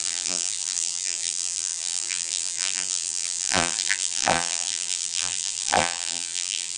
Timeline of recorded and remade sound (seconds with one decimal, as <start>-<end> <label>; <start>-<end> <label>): 0.0-6.8 remade